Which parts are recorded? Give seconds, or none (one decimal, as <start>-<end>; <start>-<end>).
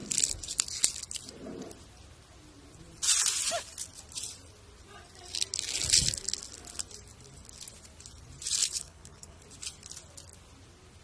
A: 0.0-8.6; 9.4-11.0